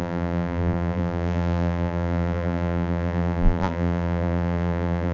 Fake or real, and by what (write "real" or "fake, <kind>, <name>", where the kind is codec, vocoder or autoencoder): fake, vocoder, BigVGAN v2